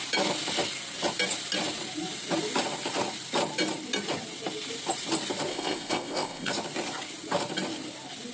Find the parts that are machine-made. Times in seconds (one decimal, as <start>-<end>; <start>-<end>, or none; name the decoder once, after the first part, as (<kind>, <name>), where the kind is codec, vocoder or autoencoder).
5.5-6.5 (codec, ZipCodec)